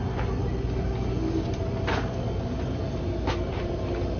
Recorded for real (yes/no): yes